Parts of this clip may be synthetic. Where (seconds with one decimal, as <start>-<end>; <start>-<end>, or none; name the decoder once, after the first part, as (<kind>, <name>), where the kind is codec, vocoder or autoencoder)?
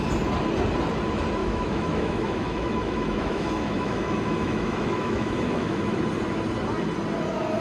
1.4-6.0 (autoencoder, DAC-VAE)